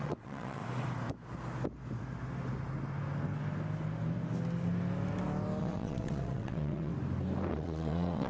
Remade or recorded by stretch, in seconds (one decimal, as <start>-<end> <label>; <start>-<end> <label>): 0.0-0.6 remade; 0.6-5.6 recorded; 5.6-6.9 remade; 6.9-7.5 recorded; 7.5-8.3 remade